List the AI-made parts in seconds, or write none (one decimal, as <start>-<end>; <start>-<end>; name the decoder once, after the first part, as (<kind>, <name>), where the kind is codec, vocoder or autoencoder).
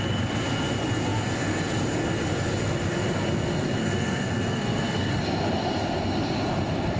3.8-5.1 (codec, SNAC)